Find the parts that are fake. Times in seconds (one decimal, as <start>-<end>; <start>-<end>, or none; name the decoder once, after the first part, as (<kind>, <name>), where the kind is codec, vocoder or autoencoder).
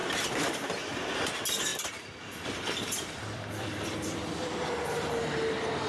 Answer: 0.0-1.1 (vocoder, BigVGAN v2); 1.7-5.2